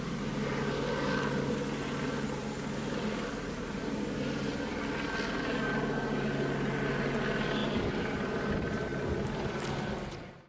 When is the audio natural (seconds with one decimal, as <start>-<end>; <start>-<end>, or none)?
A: 0.0-10.5